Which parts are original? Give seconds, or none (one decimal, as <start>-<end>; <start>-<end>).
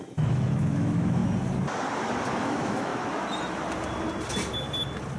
1.2-2.4; 2.9-5.2